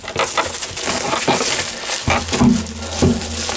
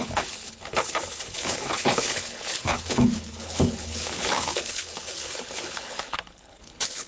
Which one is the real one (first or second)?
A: first